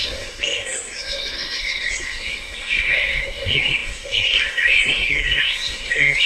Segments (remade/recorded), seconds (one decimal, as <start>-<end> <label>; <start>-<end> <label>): 0.0-6.3 remade